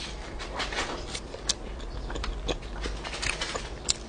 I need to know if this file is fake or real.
real